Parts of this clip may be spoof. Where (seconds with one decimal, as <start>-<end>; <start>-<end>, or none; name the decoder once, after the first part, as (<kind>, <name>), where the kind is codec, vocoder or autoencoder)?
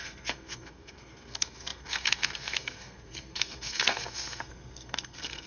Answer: 0.0-5.5 (codec, SNAC)